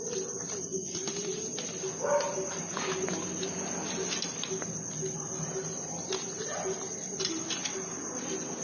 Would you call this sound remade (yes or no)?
no